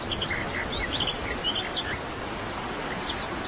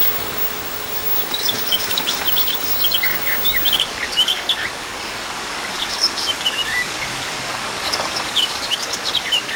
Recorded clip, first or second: first